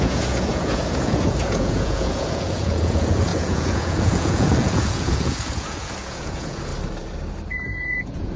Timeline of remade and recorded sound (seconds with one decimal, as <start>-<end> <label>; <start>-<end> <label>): 0.0-6.7 remade; 6.7-7.5 recorded; 7.5-8.4 remade